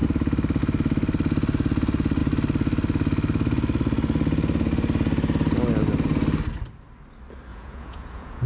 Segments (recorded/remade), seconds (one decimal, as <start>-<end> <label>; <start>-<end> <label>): 0.0-7.5 recorded; 7.5-8.5 remade